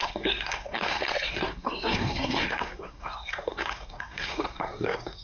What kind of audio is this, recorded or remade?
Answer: remade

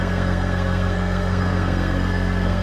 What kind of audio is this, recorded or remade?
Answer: remade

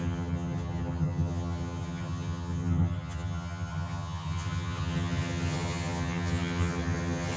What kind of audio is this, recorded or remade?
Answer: remade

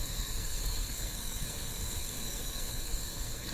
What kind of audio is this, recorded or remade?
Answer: remade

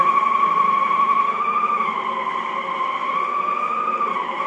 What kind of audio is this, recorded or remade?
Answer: recorded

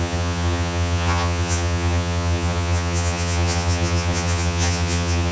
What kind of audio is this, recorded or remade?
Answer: remade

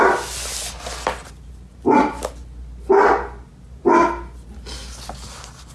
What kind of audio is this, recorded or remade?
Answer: recorded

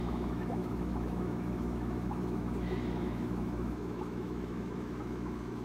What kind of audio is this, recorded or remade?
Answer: remade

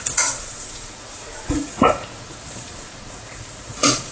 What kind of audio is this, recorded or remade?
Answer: remade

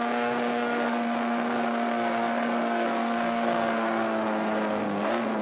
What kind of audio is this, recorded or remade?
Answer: remade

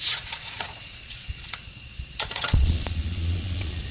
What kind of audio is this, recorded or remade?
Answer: remade